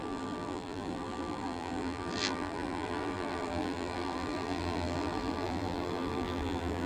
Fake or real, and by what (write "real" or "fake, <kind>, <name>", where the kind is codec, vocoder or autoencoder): fake, vocoder, BigVGAN v2